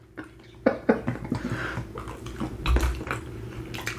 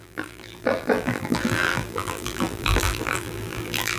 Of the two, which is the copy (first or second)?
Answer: second